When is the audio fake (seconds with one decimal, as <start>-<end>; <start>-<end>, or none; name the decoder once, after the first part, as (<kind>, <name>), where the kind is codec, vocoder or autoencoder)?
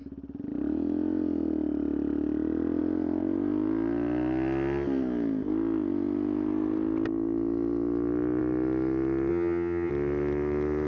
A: 9.3-9.9 (vocoder, HiFi-GAN)